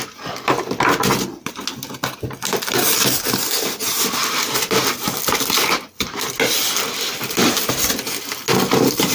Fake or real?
real